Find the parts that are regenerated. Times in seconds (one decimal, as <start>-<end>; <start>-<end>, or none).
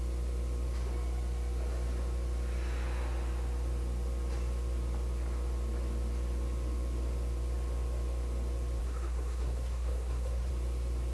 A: 8.8-10.5